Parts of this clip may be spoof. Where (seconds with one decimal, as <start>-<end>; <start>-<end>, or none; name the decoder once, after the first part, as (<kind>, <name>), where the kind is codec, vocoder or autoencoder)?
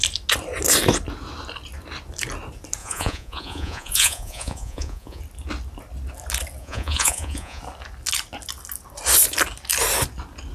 2.8-5.2 (vocoder, Vocos); 6.6-7.6